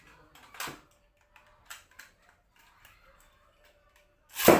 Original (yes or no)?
yes